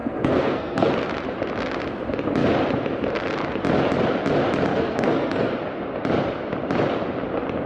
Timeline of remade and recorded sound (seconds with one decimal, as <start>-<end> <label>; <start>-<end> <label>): 0.0-0.9 remade; 0.9-4.7 recorded; 4.7-5.6 remade; 5.6-7.7 recorded